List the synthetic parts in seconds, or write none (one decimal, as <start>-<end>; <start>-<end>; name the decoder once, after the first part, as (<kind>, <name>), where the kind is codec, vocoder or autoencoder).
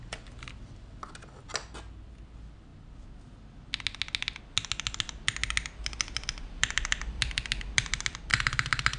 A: none